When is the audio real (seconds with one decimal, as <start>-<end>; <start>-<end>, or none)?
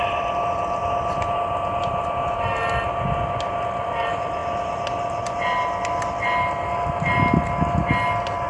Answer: 0.0-8.5